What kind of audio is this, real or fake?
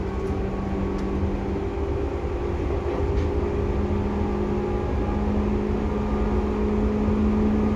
real